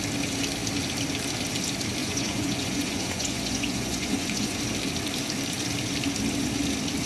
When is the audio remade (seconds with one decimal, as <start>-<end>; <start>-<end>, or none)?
2.0-4.6